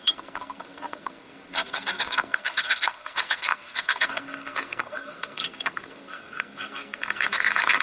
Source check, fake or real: fake